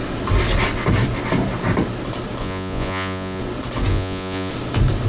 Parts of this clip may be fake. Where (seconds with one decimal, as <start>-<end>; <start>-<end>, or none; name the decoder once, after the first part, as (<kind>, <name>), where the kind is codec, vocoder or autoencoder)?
2.4-3.4 (vocoder, Vocos); 3.9-4.5